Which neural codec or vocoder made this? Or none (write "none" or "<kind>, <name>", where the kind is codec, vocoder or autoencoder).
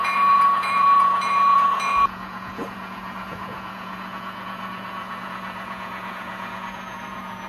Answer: vocoder, Vocos